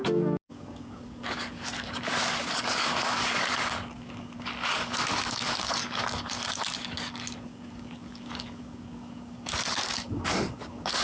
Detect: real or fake fake